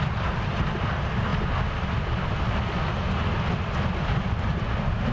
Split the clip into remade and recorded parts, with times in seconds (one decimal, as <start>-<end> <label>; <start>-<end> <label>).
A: 0.0-5.1 recorded